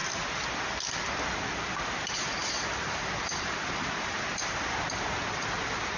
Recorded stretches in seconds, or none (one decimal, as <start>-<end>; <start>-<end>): 0.6-2.4

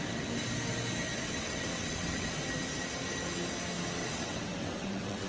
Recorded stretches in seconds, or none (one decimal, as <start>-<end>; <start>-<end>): 0.0-1.1; 2.3-4.0

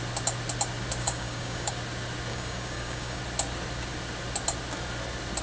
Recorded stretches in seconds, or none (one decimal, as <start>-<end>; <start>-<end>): 0.0-1.0; 1.7-2.3; 3.2-5.4

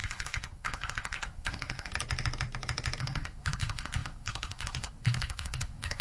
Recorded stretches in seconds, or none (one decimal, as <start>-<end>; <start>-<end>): 1.9-3.0

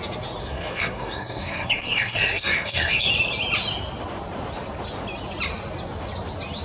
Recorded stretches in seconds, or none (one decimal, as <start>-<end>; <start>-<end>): 0.0-0.4; 3.1-6.6